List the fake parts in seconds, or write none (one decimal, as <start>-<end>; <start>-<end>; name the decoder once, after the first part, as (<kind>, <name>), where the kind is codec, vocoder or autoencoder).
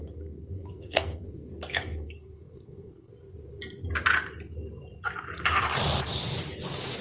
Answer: 0.0-3.1 (codec, SNAC)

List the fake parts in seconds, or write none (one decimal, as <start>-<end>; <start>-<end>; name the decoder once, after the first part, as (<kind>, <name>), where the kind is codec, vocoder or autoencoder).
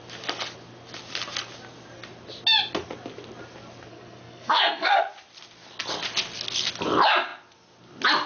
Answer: 3.9-5.1 (codec, SNAC)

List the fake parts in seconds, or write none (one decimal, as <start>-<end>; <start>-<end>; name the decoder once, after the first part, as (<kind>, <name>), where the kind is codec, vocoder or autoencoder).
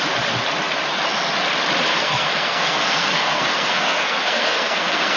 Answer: 1.9-5.2 (codec, SNAC)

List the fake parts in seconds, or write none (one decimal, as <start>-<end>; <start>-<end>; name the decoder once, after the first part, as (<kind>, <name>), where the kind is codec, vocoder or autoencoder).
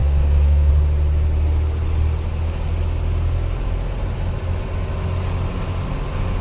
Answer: 0.0-0.7 (codec, SNAC)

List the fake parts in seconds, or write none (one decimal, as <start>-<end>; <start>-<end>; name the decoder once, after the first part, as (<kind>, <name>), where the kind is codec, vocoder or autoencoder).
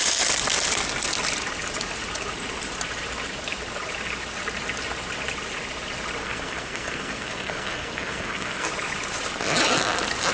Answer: 6.2-8.7 (codec, SNAC)